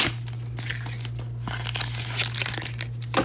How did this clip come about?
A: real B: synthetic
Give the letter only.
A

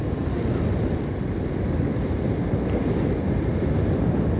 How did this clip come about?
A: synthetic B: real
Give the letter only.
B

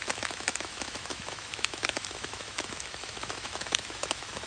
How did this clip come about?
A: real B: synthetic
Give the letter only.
B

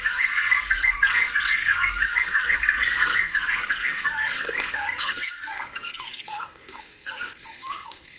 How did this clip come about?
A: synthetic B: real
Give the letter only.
A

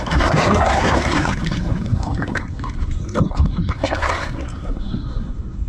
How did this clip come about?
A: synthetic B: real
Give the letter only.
A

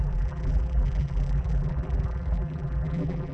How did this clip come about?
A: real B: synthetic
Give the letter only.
B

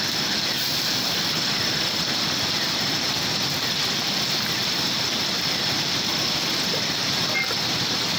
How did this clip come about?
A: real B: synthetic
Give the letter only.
A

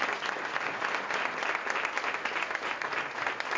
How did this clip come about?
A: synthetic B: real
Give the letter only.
B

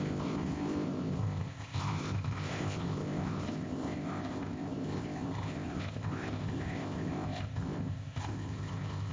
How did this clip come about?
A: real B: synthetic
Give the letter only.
B